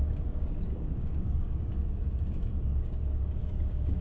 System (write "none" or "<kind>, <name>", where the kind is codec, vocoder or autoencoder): codec, DAC